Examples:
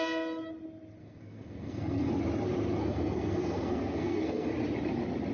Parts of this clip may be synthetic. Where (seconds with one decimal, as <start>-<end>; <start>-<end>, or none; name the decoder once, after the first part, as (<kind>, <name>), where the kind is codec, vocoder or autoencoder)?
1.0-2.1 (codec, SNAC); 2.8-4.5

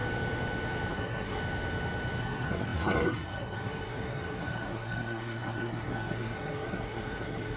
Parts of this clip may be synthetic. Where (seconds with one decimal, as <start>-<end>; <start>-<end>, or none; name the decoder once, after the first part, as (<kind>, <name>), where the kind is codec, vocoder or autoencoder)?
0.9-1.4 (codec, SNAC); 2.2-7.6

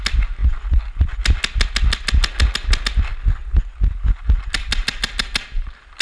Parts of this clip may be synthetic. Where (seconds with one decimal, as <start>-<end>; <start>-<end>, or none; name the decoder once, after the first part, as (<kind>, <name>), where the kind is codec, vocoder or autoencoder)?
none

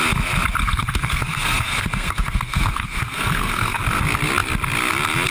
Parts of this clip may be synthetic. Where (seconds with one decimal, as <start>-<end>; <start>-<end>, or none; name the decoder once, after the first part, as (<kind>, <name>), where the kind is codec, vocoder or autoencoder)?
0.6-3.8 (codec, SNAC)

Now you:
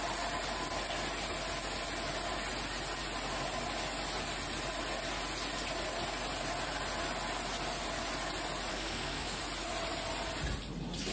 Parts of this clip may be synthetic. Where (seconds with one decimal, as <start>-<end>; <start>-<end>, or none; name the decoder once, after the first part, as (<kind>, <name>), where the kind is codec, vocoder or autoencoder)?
8.7-9.4 (codec, SNAC)

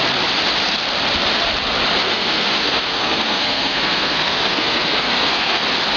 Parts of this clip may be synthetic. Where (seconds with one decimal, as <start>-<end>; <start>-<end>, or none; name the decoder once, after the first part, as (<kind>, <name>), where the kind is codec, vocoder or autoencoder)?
2.0-5.6 (codec, SNAC)

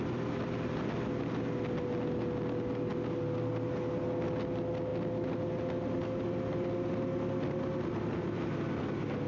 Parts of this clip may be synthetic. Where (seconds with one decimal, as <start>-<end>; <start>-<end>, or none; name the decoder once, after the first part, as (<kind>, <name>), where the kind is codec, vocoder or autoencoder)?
none

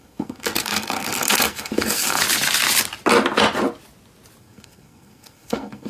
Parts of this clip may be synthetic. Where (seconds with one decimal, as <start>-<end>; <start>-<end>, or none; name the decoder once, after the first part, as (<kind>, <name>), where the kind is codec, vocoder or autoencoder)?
0.0-2.2 (codec, SNAC); 4.4-5.9